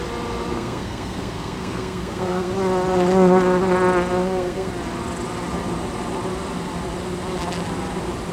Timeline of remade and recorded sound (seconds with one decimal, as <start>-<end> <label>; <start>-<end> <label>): 0.0-0.5 recorded; 0.5-2.5 remade; 2.5-4.2 recorded; 4.2-4.7 remade; 4.7-8.3 recorded

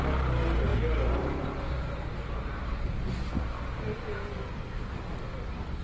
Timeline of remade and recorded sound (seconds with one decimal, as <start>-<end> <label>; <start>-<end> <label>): 0.0-5.8 recorded